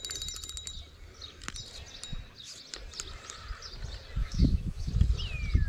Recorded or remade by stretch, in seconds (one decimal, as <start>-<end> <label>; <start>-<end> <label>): 0.0-4.2 recorded; 4.2-4.9 remade; 4.9-5.7 recorded